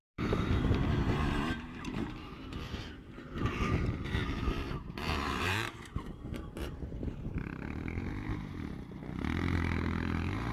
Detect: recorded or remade remade